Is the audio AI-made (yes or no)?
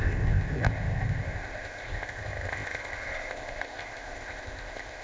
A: yes